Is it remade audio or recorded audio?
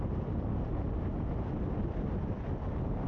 recorded